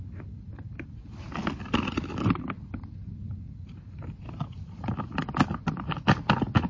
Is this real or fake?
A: real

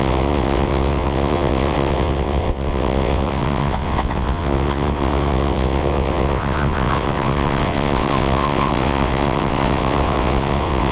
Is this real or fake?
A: fake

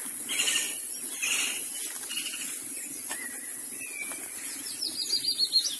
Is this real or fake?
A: real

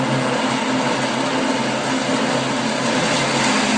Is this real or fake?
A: real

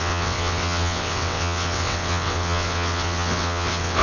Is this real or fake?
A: fake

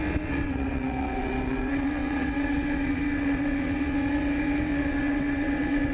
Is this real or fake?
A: fake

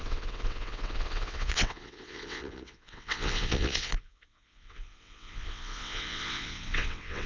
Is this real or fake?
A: fake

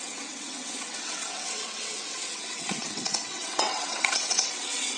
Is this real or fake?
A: fake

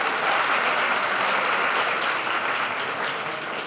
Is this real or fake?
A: real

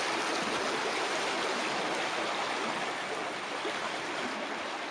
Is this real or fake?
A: real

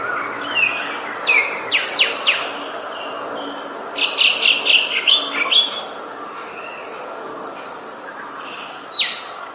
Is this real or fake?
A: real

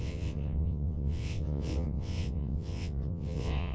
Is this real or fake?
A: fake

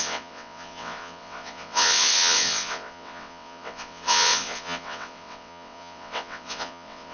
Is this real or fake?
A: fake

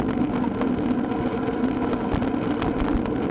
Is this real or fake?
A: real